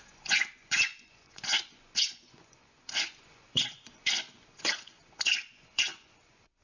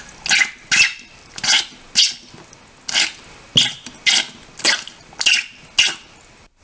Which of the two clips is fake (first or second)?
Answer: first